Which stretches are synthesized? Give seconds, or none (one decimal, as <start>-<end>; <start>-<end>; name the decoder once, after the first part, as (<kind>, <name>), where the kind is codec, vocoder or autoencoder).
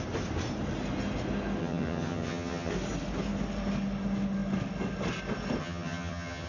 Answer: 1.6-2.7 (vocoder, HiFi-GAN); 5.6-6.5